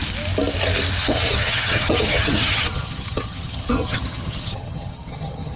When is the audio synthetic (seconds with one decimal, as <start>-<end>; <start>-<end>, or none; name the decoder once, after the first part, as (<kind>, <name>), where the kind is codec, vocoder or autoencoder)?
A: 1.0-5.6 (vocoder, HiFi-GAN)